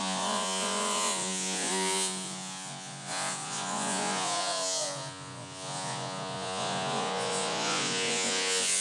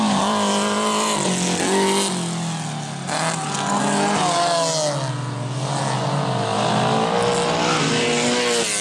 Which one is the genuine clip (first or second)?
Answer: second